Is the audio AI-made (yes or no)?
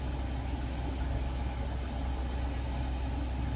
no